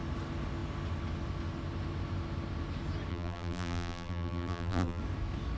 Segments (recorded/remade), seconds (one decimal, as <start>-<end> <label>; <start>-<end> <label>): 0.0-3.1 recorded; 3.1-5.0 remade; 5.0-5.6 recorded